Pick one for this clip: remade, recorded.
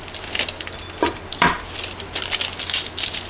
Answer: recorded